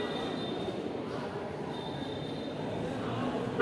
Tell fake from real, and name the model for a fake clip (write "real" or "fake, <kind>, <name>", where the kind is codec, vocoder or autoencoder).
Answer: real